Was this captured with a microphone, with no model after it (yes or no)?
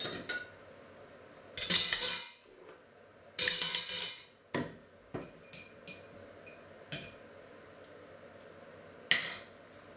yes